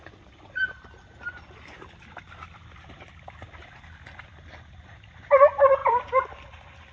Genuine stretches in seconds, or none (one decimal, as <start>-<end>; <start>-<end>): 0.0-6.9